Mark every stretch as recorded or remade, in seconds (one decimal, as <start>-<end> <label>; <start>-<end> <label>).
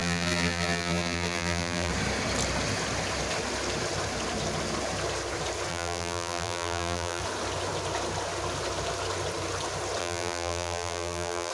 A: 0.0-1.9 remade; 1.9-5.7 recorded; 5.7-7.2 remade; 7.2-10.0 recorded; 10.0-11.5 remade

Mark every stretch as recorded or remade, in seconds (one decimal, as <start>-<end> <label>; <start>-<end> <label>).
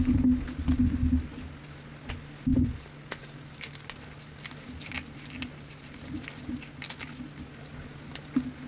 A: 0.0-8.7 recorded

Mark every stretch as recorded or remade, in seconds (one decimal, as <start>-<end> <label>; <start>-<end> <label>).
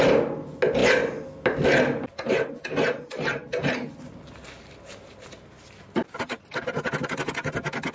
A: 0.0-7.9 recorded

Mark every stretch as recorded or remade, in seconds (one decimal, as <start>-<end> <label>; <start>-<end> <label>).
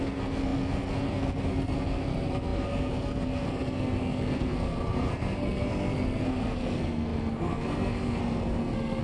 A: 0.0-9.0 remade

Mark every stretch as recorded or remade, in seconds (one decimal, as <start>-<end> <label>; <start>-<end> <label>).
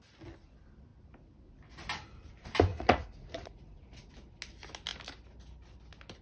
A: 0.0-2.7 recorded; 2.7-4.1 remade; 4.1-6.2 recorded